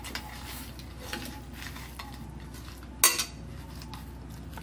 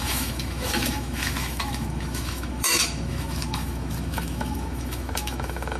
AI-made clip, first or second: second